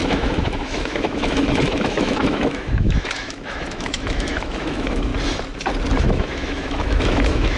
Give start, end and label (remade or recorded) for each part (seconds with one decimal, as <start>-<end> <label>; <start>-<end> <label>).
0.0-5.1 remade; 5.1-6.0 recorded; 6.0-7.6 remade